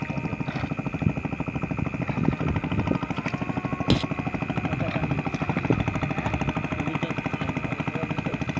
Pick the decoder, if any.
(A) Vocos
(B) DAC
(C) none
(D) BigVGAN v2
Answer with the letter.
C